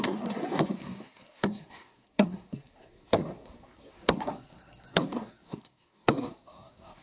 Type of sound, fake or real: fake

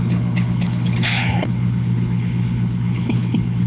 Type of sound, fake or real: fake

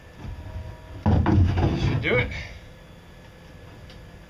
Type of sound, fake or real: real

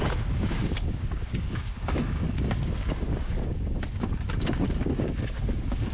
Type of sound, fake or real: fake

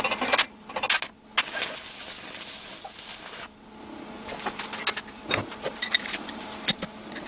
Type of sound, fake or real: real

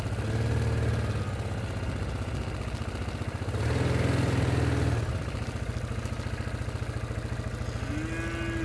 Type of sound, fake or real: real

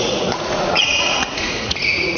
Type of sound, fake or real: fake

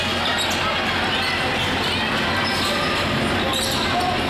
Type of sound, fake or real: real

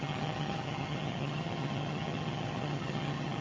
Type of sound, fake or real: fake